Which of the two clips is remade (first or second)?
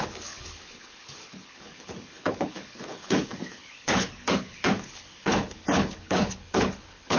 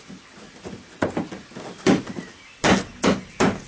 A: first